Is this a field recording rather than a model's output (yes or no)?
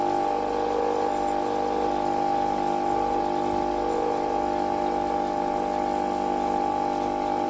yes